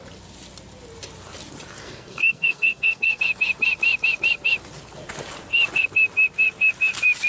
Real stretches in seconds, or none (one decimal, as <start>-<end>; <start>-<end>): 0.0-1.8; 3.2-7.3